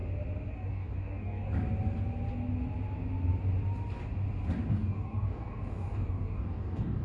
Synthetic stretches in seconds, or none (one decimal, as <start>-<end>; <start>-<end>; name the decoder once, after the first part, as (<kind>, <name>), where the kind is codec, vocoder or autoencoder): 0.5-1.5 (codec, DAC); 4.7-7.0